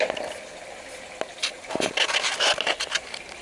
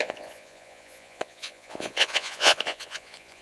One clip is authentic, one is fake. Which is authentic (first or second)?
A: first